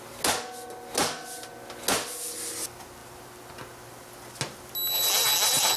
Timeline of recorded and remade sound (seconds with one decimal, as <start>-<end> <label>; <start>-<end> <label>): 0.0-5.8 recorded